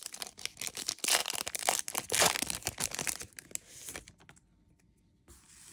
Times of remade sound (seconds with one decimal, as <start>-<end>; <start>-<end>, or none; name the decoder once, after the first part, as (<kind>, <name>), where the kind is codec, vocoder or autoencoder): none